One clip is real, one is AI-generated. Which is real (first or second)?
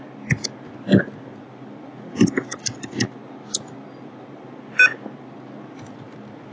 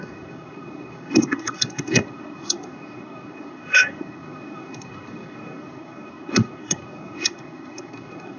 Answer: first